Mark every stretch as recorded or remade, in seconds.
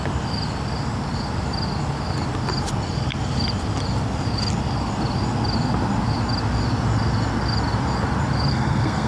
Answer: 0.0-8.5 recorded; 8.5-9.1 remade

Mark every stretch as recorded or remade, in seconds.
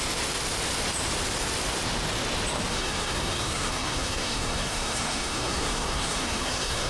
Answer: 0.0-2.7 recorded; 2.7-6.9 remade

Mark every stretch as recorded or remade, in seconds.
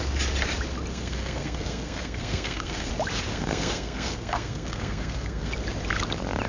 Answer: 0.0-0.9 recorded; 0.9-2.9 remade; 2.9-3.3 recorded; 3.3-5.5 remade; 5.5-6.5 recorded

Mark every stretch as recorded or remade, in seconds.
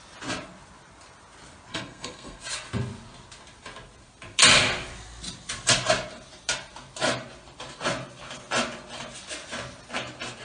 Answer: 0.0-1.7 recorded; 1.7-2.4 remade; 2.4-10.4 recorded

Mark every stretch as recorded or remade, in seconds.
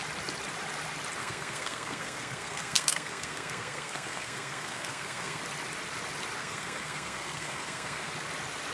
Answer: 0.0-1.2 recorded; 1.2-5.4 remade; 5.4-6.4 recorded; 6.4-8.1 remade; 8.1-8.7 recorded